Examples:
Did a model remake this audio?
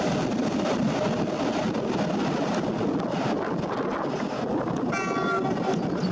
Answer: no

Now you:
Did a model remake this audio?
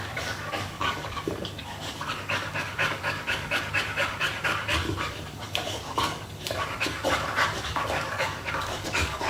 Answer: yes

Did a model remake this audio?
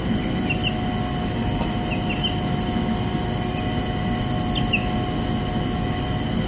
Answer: no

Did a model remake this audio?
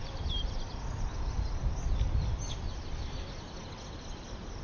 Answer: no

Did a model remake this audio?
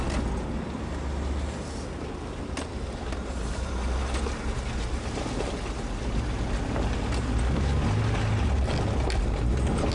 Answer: no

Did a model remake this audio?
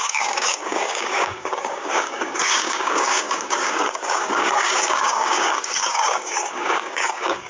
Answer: yes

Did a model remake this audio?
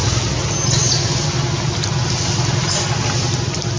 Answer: no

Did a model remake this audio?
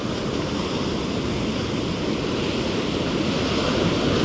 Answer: no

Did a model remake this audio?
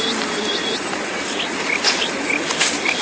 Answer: no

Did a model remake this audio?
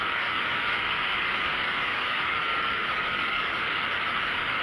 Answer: yes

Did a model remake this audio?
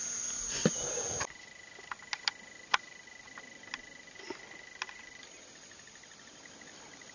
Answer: no